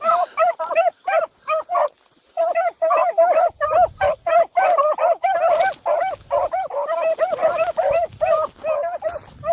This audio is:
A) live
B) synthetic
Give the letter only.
A